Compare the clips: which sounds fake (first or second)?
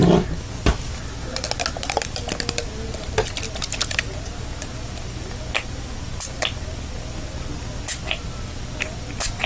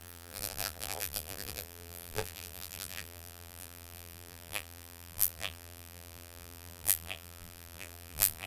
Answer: second